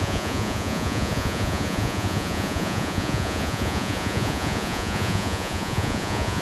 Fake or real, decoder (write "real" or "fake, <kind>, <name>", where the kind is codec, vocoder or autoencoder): fake, vocoder, Vocos